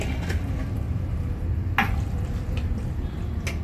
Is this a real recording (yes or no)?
yes